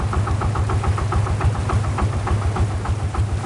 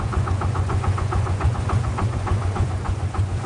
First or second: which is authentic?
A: first